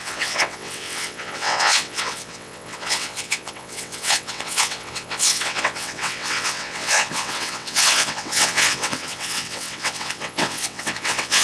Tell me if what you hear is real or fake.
fake